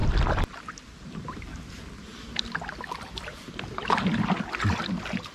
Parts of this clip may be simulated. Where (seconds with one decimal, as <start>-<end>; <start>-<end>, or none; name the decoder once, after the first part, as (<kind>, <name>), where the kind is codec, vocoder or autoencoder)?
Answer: none